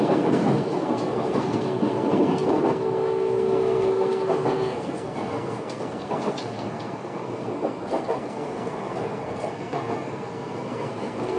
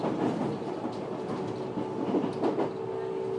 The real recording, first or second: second